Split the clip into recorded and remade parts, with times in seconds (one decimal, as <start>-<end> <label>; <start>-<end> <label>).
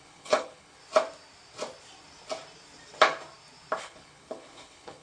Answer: 0.0-0.8 remade; 0.8-3.8 recorded; 3.8-5.0 remade